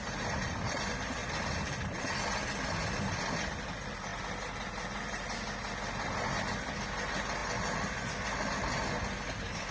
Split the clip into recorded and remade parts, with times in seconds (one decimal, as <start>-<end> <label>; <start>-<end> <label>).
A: 0.0-9.7 recorded